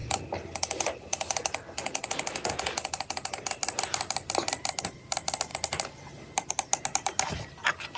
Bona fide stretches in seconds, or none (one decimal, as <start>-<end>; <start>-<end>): 0.0-8.0